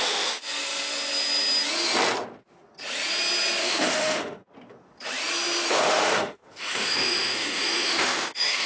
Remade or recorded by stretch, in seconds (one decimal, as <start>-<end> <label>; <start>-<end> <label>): 0.0-0.4 remade; 0.4-3.6 recorded; 3.6-4.4 remade; 4.4-5.7 recorded; 5.7-8.7 remade